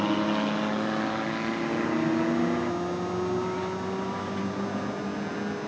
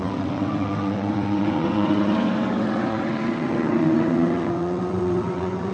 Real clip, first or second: first